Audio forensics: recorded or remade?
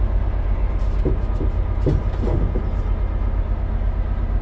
recorded